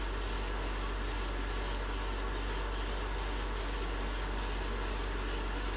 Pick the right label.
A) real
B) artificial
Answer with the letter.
A